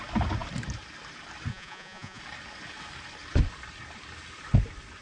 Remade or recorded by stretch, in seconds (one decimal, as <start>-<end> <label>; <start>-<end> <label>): 0.0-1.5 recorded; 1.5-2.2 remade; 2.2-5.0 recorded